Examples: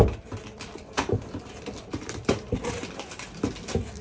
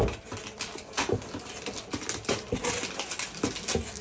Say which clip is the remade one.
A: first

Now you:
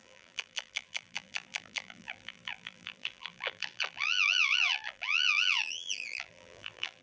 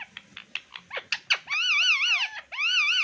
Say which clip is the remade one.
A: first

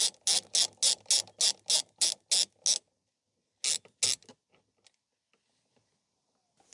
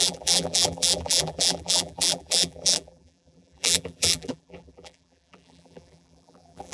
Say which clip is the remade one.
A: second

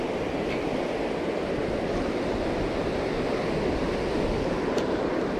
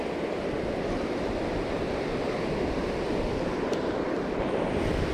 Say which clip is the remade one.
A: second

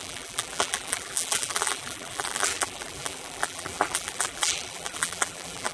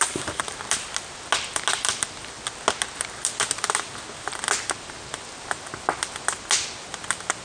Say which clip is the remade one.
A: first